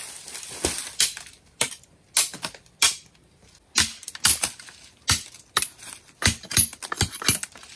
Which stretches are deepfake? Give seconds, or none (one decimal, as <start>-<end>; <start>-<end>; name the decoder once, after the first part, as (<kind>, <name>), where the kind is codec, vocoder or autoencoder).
none